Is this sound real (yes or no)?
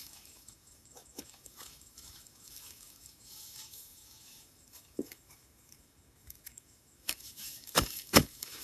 no